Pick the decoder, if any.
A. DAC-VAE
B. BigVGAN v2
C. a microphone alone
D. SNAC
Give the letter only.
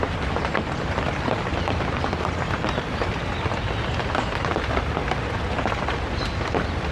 C